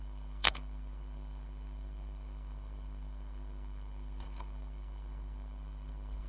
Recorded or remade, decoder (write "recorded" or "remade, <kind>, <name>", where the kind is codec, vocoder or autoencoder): remade, codec, SNAC